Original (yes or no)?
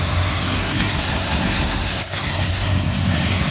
no